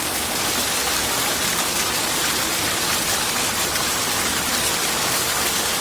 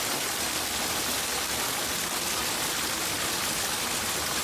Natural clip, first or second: second